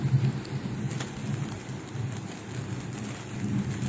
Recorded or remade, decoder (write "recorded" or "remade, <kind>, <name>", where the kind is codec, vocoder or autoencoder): recorded